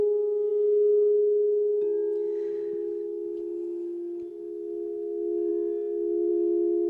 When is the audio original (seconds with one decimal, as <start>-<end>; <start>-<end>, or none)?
0.0-6.9